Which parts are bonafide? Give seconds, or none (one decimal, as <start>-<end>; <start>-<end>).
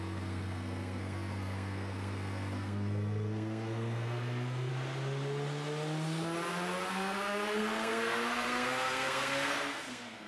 4.7-6.9